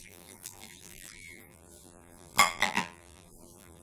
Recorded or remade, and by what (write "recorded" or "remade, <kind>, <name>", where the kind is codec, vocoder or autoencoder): remade, vocoder, BigVGAN v2